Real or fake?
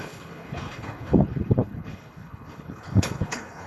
fake